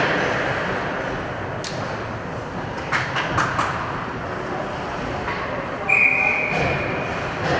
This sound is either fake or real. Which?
real